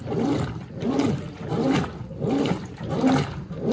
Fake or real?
real